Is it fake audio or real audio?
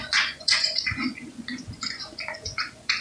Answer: fake